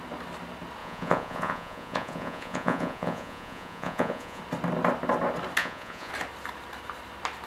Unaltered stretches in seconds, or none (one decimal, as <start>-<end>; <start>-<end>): 0.0-0.8; 4.4-5.6; 6.1-7.5